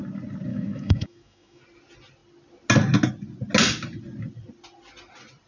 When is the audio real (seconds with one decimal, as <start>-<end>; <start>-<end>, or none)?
0.0-0.5; 1.6-5.5